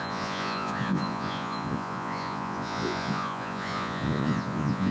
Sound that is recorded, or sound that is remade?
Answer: remade